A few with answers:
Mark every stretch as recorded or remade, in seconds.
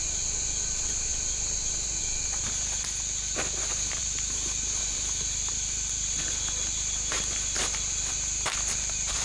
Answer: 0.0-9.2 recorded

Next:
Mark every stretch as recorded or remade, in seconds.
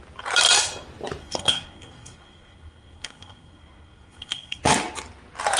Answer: 0.0-1.2 recorded; 1.2-4.6 remade; 4.6-5.6 recorded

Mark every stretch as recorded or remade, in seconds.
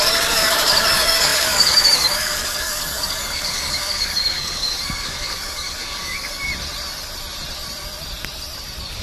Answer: 0.0-6.5 remade; 6.5-9.0 recorded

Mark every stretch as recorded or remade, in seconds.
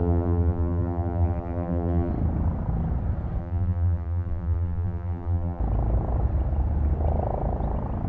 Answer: 0.0-2.1 remade; 2.1-3.4 recorded; 3.4-5.6 remade; 5.6-8.1 recorded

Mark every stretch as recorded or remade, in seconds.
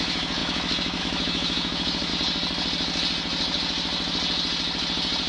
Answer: 0.0-2.1 remade; 2.1-5.3 recorded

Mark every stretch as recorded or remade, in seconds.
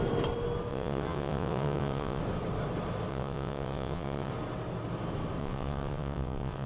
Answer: 0.0-0.7 recorded; 0.7-2.2 remade; 2.2-3.1 recorded; 3.1-4.3 remade; 4.3-5.4 recorded; 5.4-6.7 remade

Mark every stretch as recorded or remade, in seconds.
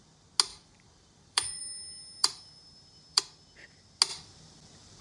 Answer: 0.0-0.5 recorded; 0.5-1.6 remade; 1.6-2.2 recorded; 2.2-3.2 remade; 3.2-5.0 recorded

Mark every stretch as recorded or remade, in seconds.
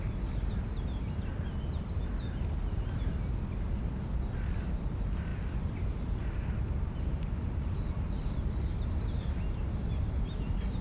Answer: 0.0-10.8 recorded